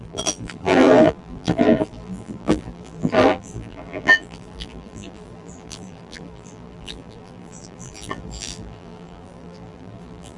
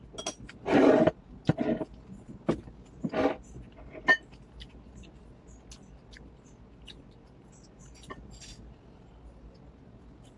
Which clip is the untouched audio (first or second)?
second